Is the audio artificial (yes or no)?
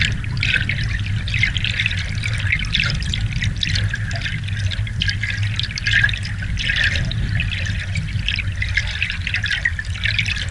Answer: no